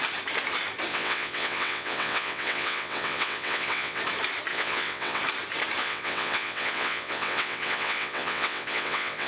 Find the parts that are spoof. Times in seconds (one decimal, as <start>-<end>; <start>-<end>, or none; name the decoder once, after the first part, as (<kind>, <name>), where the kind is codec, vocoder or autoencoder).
0.9-4.0 (vocoder, WaveNeXt); 4.5-5.2; 5.8-9.3